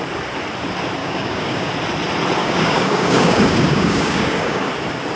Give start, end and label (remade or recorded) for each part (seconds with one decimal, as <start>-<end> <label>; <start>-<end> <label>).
0.0-1.0 recorded; 1.0-1.7 remade; 1.7-2.4 recorded; 2.4-4.7 remade; 4.7-5.2 recorded